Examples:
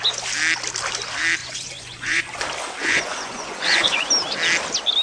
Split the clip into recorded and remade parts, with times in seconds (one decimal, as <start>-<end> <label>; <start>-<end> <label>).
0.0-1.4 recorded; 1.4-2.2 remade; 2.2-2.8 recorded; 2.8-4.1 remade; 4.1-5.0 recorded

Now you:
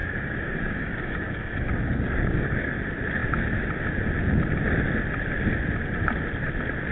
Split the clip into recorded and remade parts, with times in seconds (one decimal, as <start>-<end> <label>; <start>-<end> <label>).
0.0-2.8 remade; 2.8-6.9 recorded

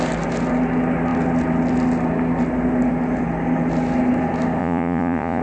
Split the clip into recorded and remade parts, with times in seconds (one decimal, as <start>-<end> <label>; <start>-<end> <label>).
0.0-4.6 recorded; 4.6-5.4 remade

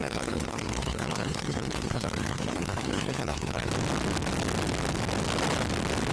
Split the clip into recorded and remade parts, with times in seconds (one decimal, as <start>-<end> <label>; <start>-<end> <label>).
0.0-3.7 remade; 3.7-6.1 recorded

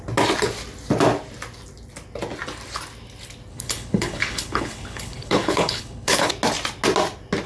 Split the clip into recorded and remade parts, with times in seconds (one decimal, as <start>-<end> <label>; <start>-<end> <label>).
0.0-3.5 recorded; 3.5-6.3 remade; 6.3-7.5 recorded

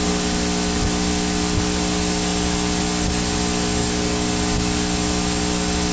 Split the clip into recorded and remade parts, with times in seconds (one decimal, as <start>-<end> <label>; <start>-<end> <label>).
0.0-3.8 recorded; 3.8-4.3 remade; 4.3-5.9 recorded

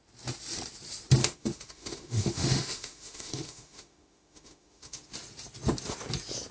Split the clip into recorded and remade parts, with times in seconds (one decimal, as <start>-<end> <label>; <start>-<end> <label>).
0.0-1.2 recorded; 1.2-5.1 remade; 5.1-6.5 recorded